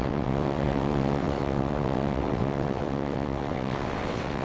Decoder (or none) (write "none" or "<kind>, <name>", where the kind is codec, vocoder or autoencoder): vocoder, WaveNeXt